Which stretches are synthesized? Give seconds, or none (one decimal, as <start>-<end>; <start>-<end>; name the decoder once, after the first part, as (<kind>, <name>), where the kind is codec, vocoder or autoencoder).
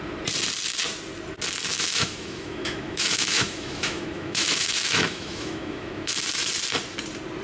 1.7-6.1 (autoencoder, DAC-VAE)